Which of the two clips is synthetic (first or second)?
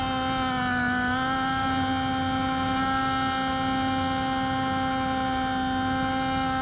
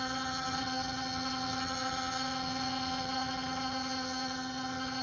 second